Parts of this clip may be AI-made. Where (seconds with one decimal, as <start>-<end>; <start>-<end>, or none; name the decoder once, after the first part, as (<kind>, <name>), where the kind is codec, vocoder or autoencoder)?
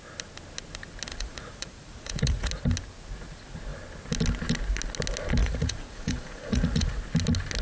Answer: 1.1-2.5 (vocoder, Vocos); 5.4-7.0